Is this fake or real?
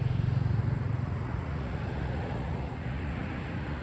fake